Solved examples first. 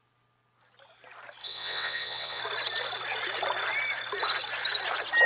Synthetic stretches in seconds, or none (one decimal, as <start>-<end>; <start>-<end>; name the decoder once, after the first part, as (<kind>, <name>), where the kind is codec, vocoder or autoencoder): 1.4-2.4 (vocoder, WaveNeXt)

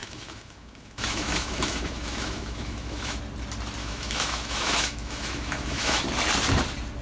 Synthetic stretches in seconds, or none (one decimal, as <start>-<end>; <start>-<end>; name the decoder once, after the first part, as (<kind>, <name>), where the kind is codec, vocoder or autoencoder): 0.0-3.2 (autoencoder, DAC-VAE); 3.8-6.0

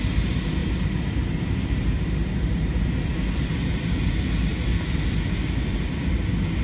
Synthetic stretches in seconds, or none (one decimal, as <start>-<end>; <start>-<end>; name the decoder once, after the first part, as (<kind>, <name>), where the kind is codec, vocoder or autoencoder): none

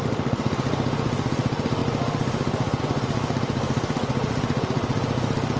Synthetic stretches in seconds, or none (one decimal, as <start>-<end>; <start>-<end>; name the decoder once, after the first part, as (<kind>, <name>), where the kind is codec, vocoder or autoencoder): none

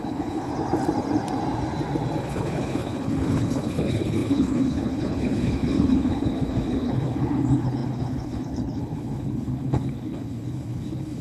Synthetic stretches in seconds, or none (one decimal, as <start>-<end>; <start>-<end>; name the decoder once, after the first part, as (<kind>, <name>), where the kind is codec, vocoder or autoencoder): 0.0-0.5 (codec, HILCodec); 2.2-11.2

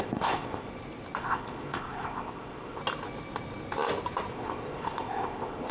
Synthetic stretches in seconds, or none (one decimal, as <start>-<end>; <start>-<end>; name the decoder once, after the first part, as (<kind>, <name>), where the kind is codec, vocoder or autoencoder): 0.0-0.7 (codec, ZipCodec); 1.2-2.8; 4.3-5.7